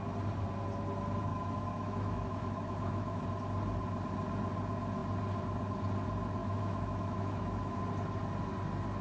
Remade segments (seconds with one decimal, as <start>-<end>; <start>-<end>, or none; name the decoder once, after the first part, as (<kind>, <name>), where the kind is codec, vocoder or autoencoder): 1.3-3.2 (autoencoder, DAC-VAE); 6.4-7.8